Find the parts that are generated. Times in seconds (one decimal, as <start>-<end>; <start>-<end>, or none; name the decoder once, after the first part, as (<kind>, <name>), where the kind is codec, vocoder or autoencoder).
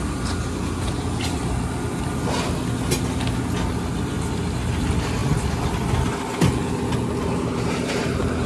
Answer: none